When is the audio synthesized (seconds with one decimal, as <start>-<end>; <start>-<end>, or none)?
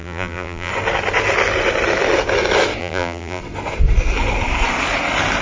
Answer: 0.0-0.7; 2.8-3.4